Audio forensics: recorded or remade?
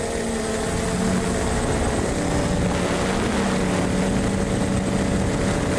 recorded